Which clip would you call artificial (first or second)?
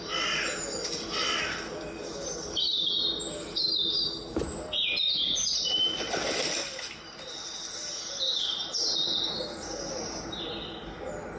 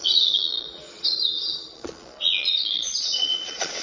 second